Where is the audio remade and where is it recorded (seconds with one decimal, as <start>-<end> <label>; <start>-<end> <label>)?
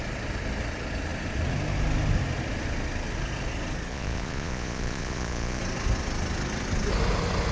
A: 0.0-3.9 recorded; 3.9-5.6 remade; 5.6-7.5 recorded